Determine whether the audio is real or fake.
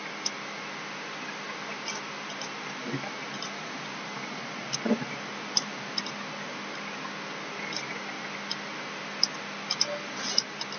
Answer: real